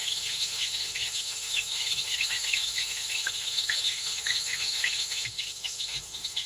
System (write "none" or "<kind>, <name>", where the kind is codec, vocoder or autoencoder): autoencoder, DAC-VAE